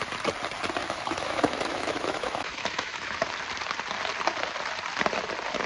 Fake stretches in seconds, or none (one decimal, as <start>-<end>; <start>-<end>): 0.8-3.3

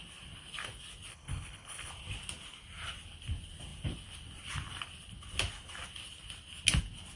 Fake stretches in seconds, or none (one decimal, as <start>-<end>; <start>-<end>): 1.1-1.9

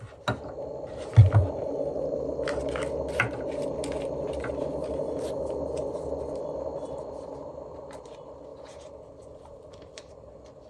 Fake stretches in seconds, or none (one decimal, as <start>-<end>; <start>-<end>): none

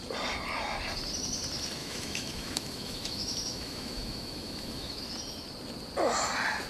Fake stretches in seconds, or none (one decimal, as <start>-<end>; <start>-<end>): 1.8-5.0